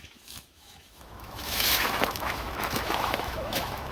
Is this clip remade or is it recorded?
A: remade